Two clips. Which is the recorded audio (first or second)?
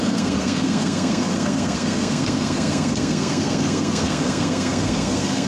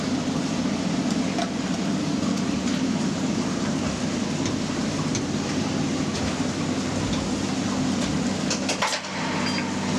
second